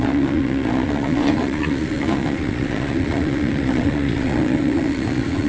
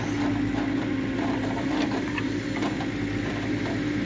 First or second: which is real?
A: second